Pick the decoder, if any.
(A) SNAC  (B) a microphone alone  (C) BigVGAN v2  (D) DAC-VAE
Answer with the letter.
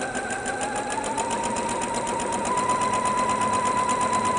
B